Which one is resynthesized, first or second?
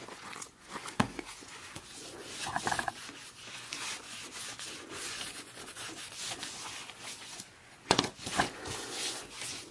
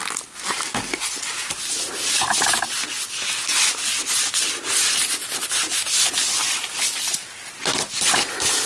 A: first